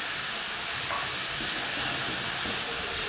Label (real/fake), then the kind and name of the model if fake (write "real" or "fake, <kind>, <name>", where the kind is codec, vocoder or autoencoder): fake, vocoder, BigVGAN v2